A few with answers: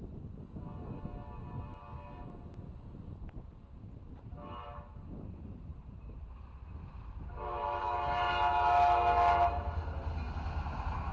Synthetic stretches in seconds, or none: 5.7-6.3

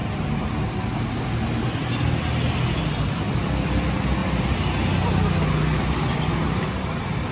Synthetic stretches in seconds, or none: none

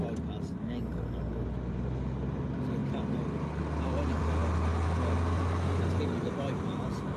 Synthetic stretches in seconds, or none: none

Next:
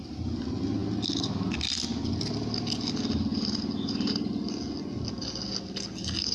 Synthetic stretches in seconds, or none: 3.3-4.3

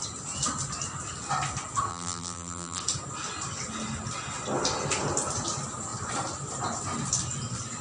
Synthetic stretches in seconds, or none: 1.9-2.8

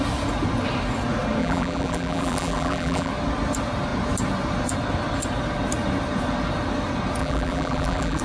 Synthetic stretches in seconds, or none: 1.4-3.1; 7.2-8.2

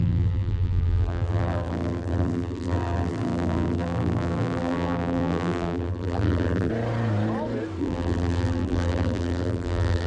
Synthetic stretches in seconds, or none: 0.0-6.7; 7.8-10.1